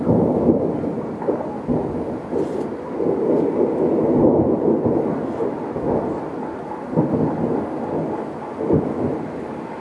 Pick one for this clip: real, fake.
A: real